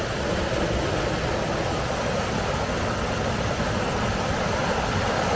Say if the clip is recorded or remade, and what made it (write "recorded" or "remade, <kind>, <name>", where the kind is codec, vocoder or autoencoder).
recorded